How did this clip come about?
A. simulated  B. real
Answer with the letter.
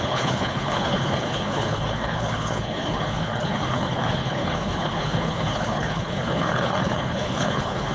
A